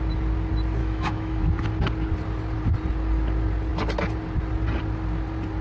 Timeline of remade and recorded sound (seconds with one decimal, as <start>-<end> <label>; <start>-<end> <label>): 0.0-0.8 recorded; 0.8-1.4 remade; 1.4-5.6 recorded